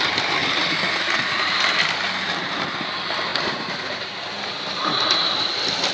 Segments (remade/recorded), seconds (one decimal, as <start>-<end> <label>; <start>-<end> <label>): 0.0-0.4 remade; 0.4-1.4 recorded; 1.4-5.9 remade